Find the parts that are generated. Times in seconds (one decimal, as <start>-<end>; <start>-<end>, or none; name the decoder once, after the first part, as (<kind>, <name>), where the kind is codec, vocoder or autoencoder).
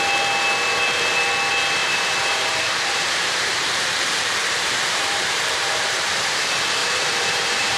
1.8-6.3 (vocoder, BigVGAN v2); 6.8-7.8